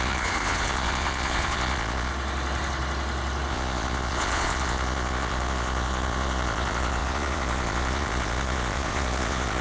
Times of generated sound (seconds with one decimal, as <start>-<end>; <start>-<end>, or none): 0.0-2.1; 3.5-9.6